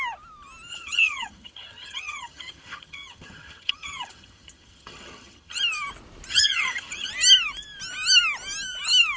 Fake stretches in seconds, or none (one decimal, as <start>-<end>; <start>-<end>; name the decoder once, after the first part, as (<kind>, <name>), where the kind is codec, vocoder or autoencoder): 0.7-5.6 (vocoder, HiFi-GAN); 6.3-7.1